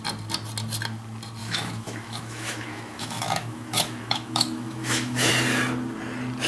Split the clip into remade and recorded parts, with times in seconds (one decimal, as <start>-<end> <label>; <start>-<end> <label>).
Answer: 0.0-1.4 recorded; 1.4-5.3 remade; 5.3-6.5 recorded